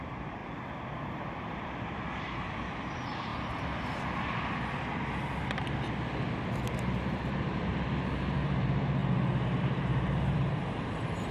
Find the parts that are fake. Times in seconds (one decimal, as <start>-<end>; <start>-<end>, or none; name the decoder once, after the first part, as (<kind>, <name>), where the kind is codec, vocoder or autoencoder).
0.0-0.4 (vocoder, BigVGAN v2); 2.9-3.3; 6.7-9.0; 9.6-11.3